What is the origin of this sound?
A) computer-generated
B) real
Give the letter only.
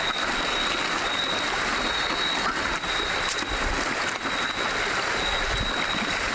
B